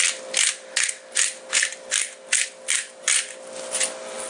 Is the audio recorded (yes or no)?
yes